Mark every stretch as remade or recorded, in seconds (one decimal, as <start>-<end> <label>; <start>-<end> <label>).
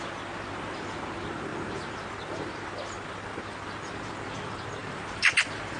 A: 0.0-4.8 recorded; 4.8-5.8 remade